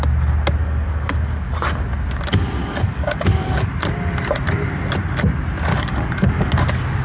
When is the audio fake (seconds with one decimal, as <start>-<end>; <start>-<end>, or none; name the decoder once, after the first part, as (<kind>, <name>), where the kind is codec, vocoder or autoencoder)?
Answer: 0.6-1.5 (codec, DAC); 2.6-3.7; 5.7-6.6